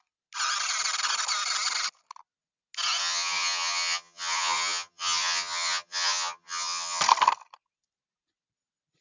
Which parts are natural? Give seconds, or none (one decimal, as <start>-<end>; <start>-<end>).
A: 0.0-3.0; 7.0-9.0